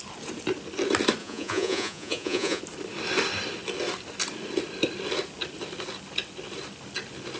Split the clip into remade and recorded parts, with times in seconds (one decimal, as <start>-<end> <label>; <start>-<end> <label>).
0.0-1.2 recorded; 1.2-2.6 remade; 2.6-7.4 recorded